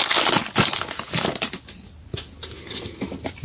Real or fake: real